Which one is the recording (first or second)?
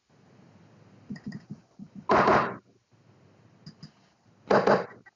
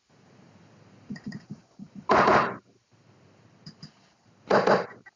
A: first